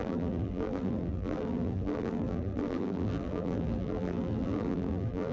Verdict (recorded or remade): remade